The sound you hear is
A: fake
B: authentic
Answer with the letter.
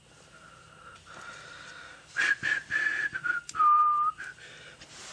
B